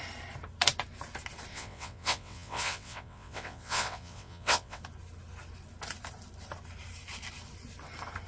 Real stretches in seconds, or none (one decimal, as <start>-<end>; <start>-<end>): 0.0-1.5; 4.8-8.3

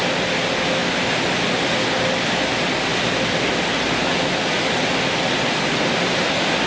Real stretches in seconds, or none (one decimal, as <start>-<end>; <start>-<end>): 0.0-6.7

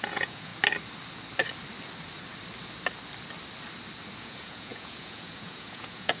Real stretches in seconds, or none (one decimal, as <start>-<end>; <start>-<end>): 0.5-4.2

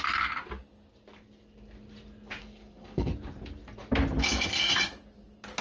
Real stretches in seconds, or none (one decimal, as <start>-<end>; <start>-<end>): 0.0-2.4; 3.1-5.6

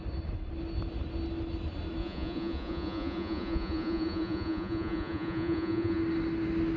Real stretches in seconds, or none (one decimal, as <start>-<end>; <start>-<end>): 0.0-2.0; 6.0-6.8

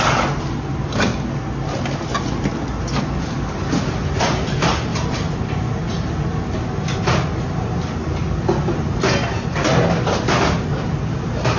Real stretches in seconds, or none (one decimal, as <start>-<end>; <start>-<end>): 0.0-11.6